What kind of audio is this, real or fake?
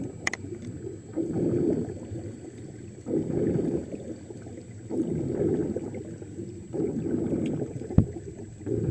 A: real